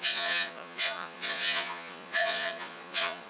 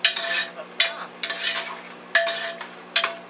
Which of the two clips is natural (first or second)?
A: second